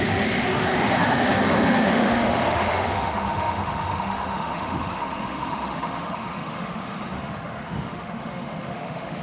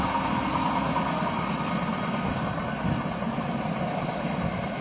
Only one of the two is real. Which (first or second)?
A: second